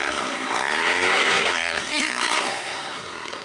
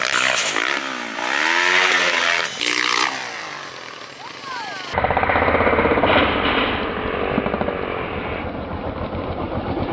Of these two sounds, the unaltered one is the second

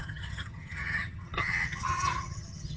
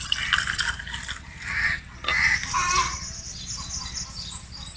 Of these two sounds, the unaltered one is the second